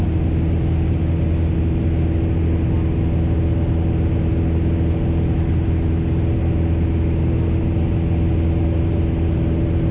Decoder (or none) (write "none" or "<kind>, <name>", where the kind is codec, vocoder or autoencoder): none